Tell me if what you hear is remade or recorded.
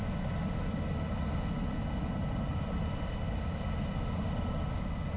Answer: recorded